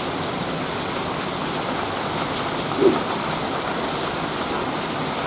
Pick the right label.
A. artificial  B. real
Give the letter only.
B